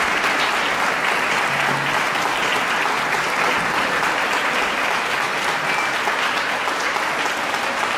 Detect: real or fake real